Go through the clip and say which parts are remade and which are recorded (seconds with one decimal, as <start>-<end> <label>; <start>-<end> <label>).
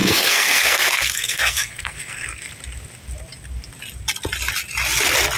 0.0-2.5 remade; 2.5-5.4 recorded